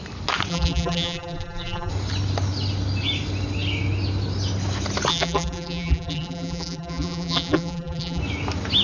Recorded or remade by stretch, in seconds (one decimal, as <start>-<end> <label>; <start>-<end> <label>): 0.0-0.5 recorded; 0.5-1.9 remade; 1.9-5.1 recorded; 5.1-8.2 remade; 8.2-8.8 recorded